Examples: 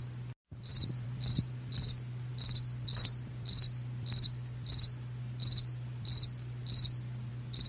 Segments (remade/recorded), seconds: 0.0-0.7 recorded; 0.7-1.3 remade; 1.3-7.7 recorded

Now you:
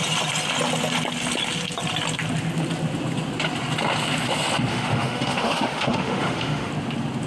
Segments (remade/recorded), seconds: 0.0-4.7 recorded; 4.7-6.7 remade; 6.7-7.3 recorded

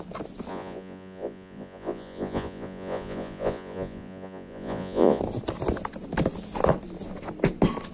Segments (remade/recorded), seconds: 0.0-0.5 recorded; 0.5-5.2 remade; 5.2-7.9 recorded

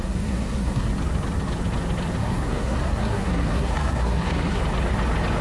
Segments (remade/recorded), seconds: 0.0-0.9 remade; 0.9-2.2 recorded; 2.2-4.6 remade; 4.6-5.4 recorded